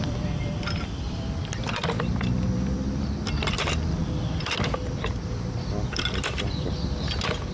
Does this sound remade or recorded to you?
remade